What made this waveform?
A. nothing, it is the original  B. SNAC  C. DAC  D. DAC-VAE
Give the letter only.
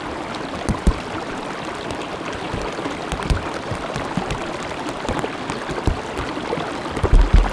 A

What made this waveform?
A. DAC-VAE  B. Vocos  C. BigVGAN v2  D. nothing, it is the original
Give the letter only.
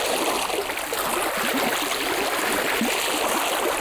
D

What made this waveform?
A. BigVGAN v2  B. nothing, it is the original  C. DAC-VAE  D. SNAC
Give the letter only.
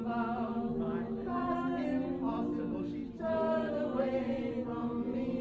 B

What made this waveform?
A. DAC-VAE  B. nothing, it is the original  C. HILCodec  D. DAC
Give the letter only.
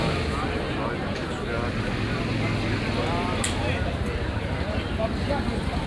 B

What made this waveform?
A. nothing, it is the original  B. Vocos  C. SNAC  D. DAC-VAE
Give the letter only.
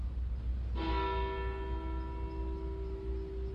A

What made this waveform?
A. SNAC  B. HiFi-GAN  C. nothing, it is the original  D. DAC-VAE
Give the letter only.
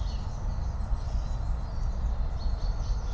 C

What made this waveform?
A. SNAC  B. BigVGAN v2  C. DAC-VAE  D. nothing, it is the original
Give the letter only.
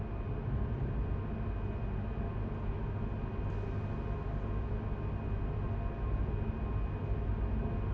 D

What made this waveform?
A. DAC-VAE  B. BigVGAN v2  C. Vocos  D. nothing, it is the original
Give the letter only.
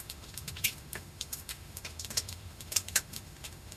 A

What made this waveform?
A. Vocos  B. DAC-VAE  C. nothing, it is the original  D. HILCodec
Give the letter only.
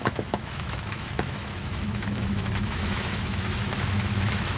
B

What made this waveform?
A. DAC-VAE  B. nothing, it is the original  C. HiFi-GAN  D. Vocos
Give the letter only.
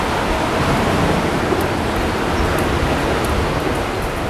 B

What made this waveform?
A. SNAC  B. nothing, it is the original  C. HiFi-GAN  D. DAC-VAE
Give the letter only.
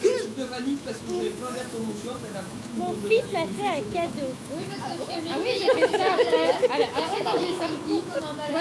D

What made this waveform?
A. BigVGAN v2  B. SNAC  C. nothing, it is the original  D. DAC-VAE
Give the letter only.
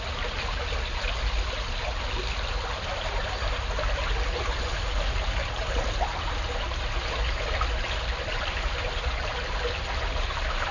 C